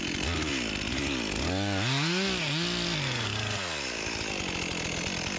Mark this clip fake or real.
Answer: real